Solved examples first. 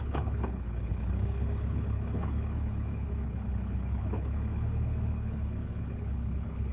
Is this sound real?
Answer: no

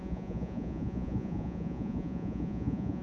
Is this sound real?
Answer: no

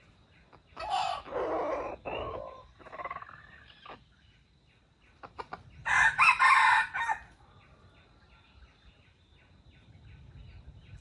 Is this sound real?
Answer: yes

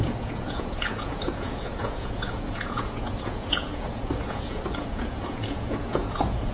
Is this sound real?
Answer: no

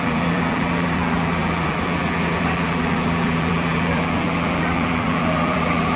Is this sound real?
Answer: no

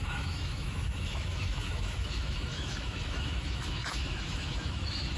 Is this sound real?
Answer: no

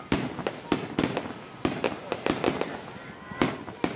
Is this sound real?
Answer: yes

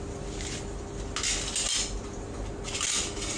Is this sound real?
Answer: yes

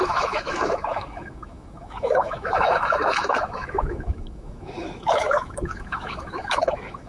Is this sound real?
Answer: no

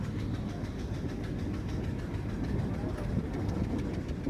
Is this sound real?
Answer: yes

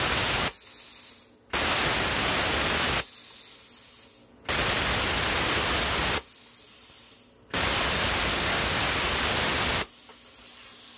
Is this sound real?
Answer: yes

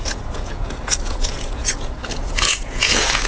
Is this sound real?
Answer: no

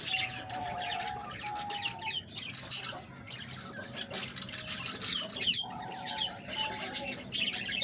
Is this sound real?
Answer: yes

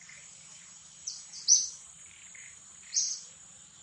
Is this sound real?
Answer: no